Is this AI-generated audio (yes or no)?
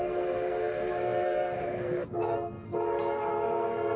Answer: yes